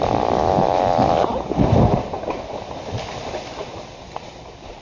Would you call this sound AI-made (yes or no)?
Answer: yes